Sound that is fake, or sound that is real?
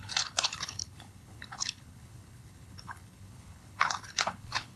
fake